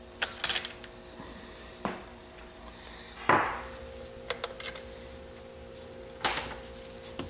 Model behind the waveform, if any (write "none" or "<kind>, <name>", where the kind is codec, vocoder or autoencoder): none